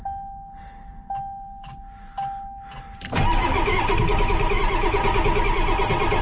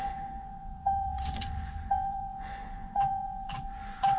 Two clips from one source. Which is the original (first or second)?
first